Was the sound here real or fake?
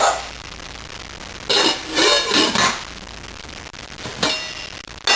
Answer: real